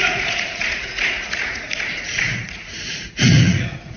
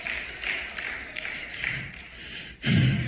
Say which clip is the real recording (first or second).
second